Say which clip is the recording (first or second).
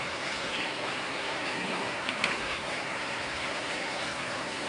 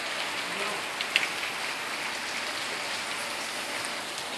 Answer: second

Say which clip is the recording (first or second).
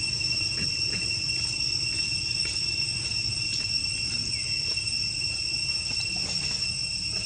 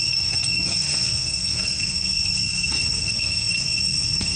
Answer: first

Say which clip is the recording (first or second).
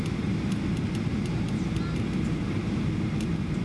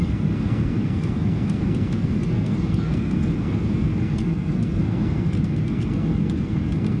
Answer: first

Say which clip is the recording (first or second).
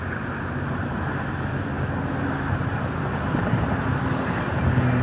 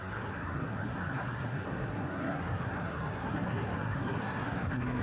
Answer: first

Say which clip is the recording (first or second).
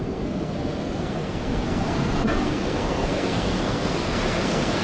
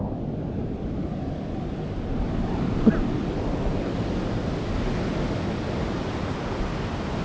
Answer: second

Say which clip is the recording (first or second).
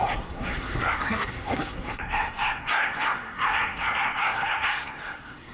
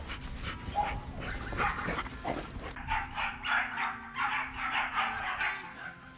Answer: second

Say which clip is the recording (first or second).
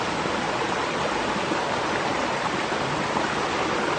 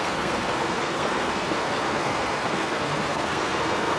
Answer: first